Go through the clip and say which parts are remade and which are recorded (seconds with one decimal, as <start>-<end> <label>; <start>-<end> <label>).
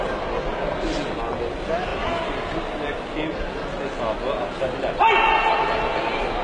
0.0-6.4 recorded